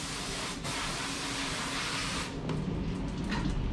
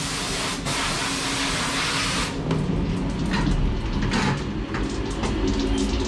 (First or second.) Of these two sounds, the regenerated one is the first